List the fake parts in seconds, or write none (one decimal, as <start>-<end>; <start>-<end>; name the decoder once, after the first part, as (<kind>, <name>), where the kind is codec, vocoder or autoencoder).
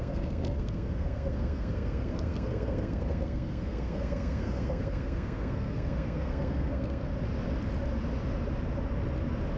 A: 0.0-7.1 (codec, SNAC)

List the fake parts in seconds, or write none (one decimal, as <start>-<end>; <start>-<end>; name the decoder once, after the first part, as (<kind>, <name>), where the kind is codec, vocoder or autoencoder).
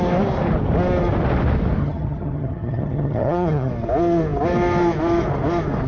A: 1.8-3.7 (vocoder, HiFi-GAN)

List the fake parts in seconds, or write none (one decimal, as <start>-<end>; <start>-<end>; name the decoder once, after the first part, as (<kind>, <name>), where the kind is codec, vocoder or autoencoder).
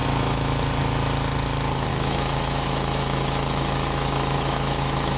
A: 0.0-0.6 (autoencoder, DAC-VAE); 1.9-5.2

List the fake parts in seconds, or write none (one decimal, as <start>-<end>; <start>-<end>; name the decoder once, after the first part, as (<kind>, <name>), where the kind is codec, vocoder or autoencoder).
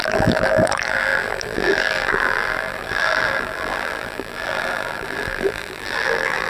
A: 0.0-6.5 (vocoder, BigVGAN v2)